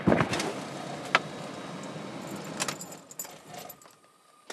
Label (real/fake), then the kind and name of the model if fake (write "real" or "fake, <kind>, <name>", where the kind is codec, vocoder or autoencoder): real